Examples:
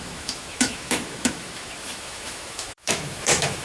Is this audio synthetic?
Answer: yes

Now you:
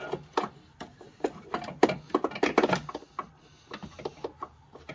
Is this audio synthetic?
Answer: no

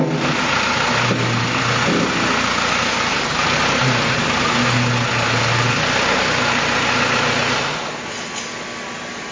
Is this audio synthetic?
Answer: no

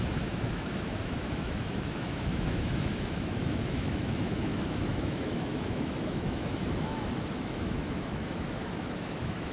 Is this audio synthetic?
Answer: yes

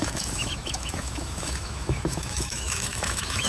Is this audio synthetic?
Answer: yes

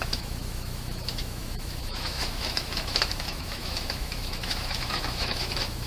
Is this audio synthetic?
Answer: yes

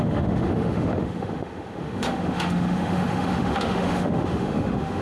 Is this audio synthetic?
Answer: yes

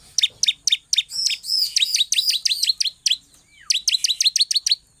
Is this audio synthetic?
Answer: no